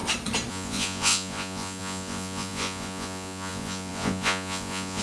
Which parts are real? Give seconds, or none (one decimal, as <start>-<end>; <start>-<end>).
0.0-0.5